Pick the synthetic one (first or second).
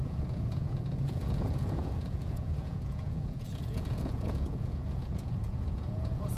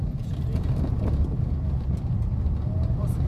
first